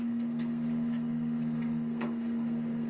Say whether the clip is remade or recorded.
remade